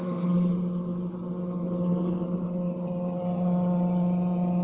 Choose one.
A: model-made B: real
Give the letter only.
B